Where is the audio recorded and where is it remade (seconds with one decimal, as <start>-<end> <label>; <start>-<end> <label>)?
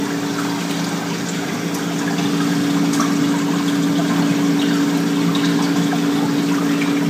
0.0-7.1 recorded